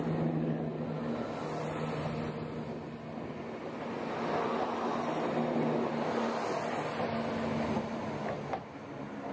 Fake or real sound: real